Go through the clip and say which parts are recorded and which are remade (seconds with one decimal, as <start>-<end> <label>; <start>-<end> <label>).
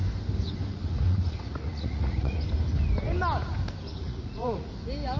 0.0-0.7 recorded; 0.7-2.4 remade; 2.4-3.9 recorded; 3.9-4.7 remade; 4.7-5.2 recorded